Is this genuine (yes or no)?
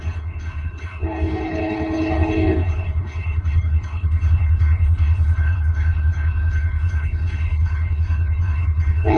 no